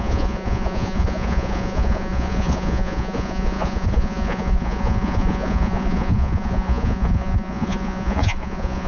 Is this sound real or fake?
fake